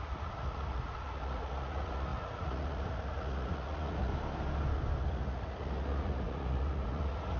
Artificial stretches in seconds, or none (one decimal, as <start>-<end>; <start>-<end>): 0.0-4.1; 5.0-7.4